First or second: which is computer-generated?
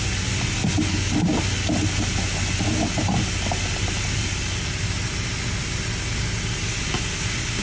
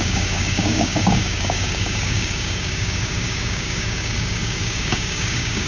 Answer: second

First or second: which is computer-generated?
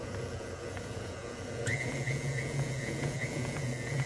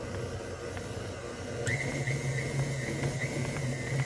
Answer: first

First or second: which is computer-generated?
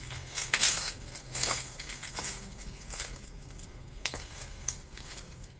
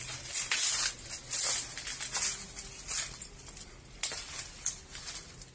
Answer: first